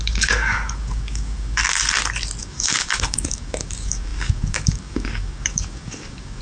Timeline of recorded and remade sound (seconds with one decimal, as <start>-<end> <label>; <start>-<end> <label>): 0.0-1.6 remade; 1.6-2.4 recorded; 2.4-6.4 remade